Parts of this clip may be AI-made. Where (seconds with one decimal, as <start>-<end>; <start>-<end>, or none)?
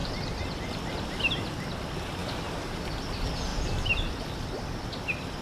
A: 0.0-0.6